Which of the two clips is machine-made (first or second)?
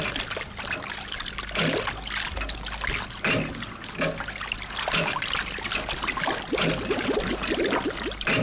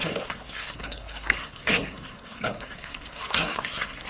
second